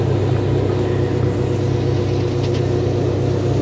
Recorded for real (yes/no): yes